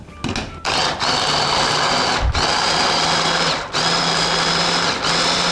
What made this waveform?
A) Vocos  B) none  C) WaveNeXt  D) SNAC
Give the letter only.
B